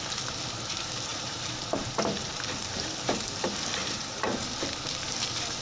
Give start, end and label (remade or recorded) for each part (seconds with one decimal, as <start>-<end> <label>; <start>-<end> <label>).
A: 0.0-1.1 recorded; 1.1-4.5 remade; 4.5-5.6 recorded